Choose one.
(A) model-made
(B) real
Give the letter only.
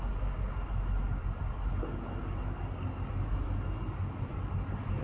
B